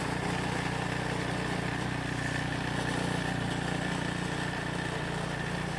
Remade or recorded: recorded